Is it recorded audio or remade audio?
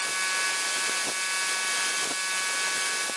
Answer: recorded